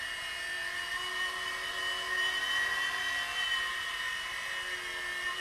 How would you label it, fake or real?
real